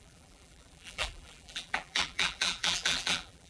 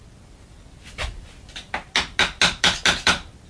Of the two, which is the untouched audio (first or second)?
second